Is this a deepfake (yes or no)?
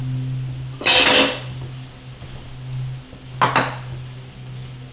no